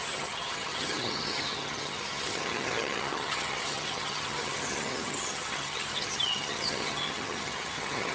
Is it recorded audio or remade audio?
remade